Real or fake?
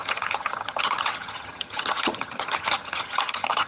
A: fake